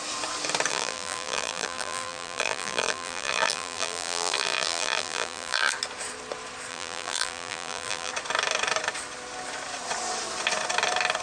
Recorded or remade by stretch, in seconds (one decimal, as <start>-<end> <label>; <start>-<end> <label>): 0.0-0.7 recorded; 0.7-5.7 remade; 5.7-6.7 recorded; 6.7-8.1 remade; 8.1-11.2 recorded